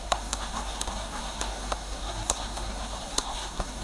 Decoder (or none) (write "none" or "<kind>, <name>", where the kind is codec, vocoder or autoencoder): codec, SNAC